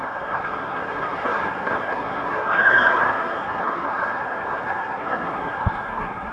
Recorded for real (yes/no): no